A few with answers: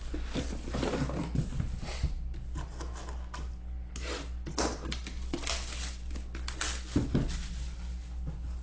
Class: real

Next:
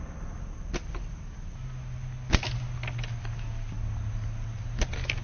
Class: real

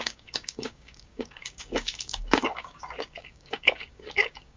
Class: fake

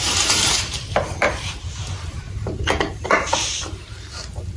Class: fake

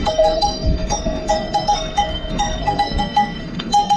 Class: fake